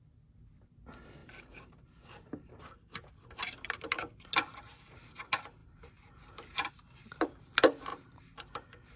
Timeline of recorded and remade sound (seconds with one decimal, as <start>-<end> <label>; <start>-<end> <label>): 0.0-1.2 recorded; 1.2-3.6 remade; 3.6-5.6 recorded; 5.6-6.7 remade; 6.7-7.9 recorded; 7.9-9.0 remade